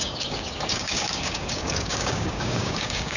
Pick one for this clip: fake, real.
fake